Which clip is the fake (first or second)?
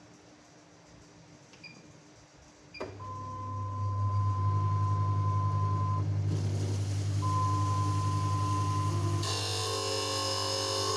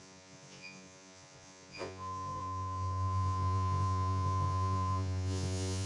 second